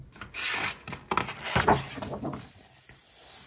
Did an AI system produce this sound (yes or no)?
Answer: no